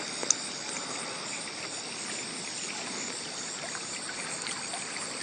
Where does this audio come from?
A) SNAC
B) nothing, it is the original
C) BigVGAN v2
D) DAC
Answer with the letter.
B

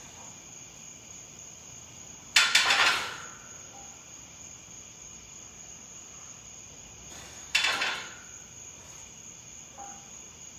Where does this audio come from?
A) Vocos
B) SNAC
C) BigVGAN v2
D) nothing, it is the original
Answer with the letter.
D